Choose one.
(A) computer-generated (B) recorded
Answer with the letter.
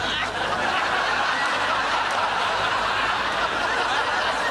B